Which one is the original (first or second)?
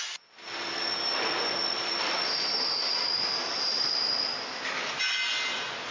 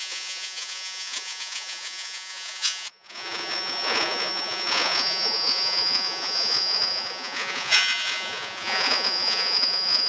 first